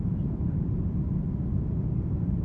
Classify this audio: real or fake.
real